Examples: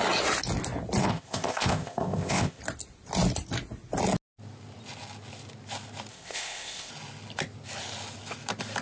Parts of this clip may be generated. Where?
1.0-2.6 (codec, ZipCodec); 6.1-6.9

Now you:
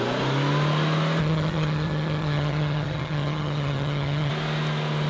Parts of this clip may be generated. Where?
1.2-4.3 (vocoder, HiFi-GAN)

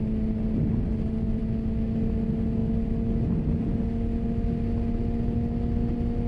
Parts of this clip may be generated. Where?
none

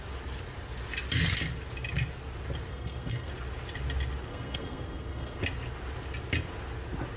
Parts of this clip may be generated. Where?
2.7-3.3 (codec, SNAC); 4.3-5.4

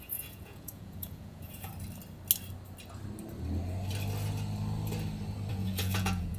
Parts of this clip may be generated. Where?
0.0-1.7 (vocoder, Vocos); 5.5-6.4

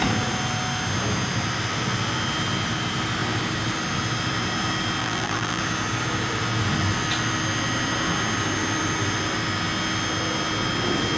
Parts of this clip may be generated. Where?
5.0-5.6 (vocoder, BigVGAN v2)